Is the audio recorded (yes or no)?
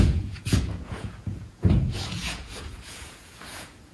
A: no